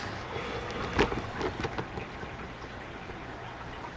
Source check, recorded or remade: recorded